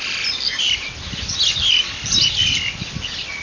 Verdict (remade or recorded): recorded